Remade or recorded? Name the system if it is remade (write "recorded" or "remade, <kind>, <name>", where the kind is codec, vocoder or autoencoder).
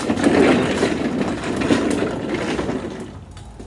recorded